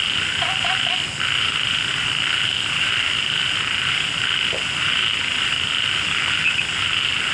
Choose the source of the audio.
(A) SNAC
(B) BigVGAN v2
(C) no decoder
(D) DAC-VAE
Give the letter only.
C